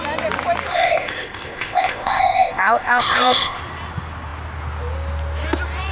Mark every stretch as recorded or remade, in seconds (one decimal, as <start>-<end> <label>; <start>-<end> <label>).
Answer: 0.0-0.7 recorded; 0.7-3.6 remade; 3.6-5.9 recorded